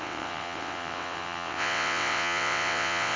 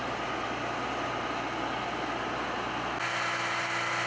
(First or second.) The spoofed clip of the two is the first